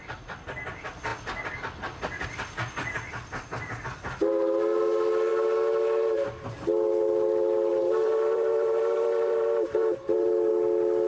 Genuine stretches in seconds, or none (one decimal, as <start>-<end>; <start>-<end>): 0.0-7.7; 10.5-11.1